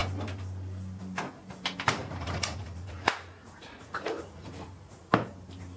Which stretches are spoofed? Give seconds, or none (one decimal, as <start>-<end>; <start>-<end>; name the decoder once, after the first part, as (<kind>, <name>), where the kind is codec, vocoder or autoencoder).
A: 2.0-5.0 (vocoder, Vocos)